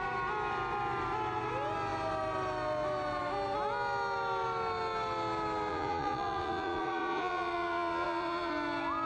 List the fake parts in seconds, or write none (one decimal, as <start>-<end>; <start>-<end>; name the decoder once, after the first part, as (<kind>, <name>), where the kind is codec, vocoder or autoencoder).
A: 5.7-8.5 (vocoder, Vocos)